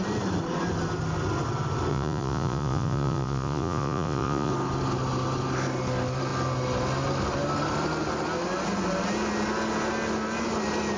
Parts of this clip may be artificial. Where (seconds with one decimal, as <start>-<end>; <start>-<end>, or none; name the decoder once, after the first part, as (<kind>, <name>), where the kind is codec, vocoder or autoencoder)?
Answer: 1.9-4.5 (vocoder, Vocos)